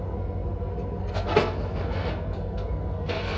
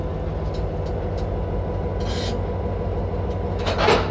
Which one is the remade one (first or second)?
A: first